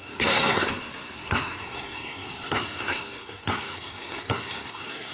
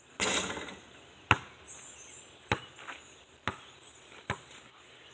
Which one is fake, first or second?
first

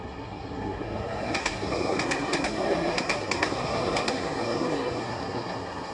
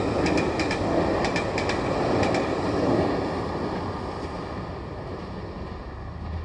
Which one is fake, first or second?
first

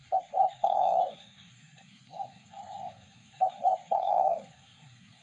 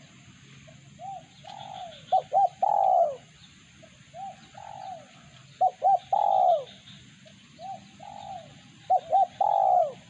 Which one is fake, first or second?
first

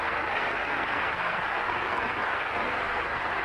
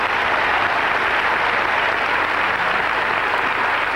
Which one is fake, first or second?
first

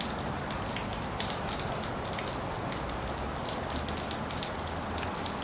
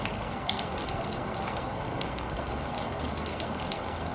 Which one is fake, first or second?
second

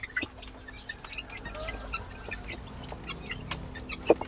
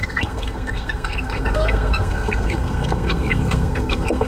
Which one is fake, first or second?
second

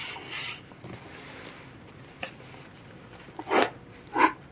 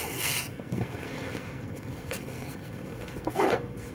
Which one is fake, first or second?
second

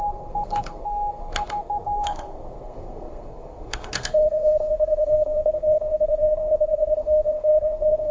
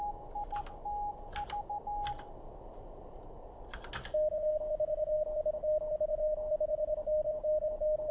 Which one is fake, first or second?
first